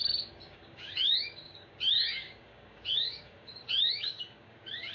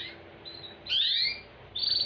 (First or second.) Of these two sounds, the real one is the second